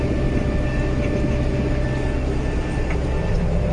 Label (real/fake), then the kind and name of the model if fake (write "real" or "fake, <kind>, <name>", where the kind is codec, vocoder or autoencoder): real